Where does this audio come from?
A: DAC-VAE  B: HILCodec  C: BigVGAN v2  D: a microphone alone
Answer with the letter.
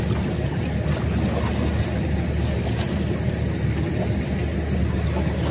D